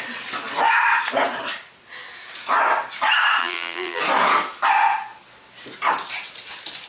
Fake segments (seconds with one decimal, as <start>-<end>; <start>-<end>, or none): 3.4-4.0